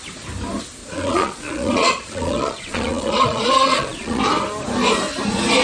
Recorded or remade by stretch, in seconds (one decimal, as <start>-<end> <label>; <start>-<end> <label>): 0.0-0.8 recorded; 0.8-4.2 remade; 4.2-5.6 recorded